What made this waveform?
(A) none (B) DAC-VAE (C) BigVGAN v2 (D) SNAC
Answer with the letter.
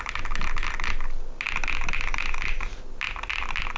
A